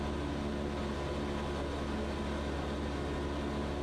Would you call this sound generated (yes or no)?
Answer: no